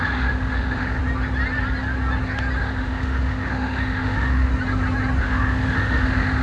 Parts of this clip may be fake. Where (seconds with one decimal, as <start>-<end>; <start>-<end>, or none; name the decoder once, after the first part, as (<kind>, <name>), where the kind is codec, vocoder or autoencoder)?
0.0-1.0 (autoencoder, DAC-VAE); 2.6-4.5; 5.2-6.4